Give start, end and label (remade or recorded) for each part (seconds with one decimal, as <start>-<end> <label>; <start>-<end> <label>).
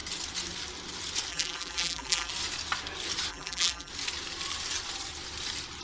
0.0-1.3 recorded; 1.3-2.3 remade; 2.3-3.3 recorded; 3.3-3.9 remade; 3.9-5.8 recorded